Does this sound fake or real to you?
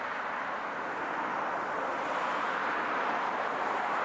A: real